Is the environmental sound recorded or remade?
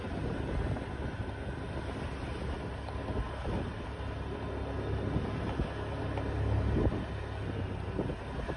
recorded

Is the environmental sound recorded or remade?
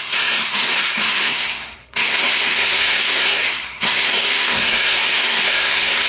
remade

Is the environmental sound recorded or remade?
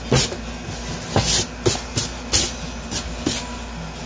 recorded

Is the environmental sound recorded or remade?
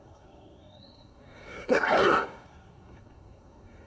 remade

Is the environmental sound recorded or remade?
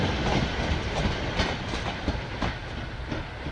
recorded